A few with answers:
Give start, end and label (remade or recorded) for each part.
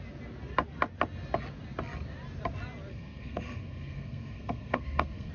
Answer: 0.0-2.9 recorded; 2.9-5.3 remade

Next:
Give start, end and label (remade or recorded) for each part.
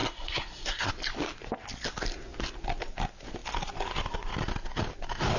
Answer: 0.0-0.9 remade; 0.9-5.4 recorded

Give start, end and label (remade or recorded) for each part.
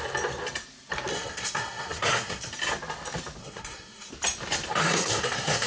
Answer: 0.0-1.1 recorded; 1.1-2.5 remade; 2.5-3.4 recorded; 3.4-4.1 remade; 4.1-4.8 recorded; 4.8-5.7 remade